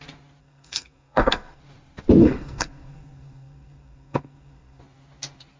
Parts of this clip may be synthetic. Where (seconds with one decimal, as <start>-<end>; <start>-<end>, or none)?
0.4-1.6; 2.2-4.8